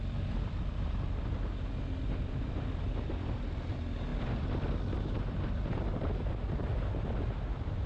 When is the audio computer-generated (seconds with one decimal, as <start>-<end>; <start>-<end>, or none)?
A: none